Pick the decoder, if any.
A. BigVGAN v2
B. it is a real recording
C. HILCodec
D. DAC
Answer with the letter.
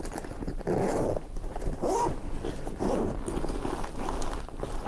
B